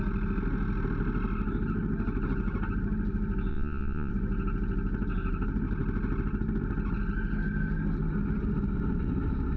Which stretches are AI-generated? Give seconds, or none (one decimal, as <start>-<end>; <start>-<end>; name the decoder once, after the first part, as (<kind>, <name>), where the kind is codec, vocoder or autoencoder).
3.5-4.1 (vocoder, Vocos)